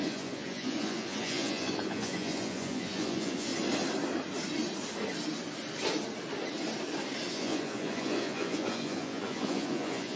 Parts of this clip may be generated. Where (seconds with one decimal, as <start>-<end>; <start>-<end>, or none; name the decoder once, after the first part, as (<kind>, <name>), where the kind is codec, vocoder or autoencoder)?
0.0-3.5 (vocoder, Vocos); 7.3-10.2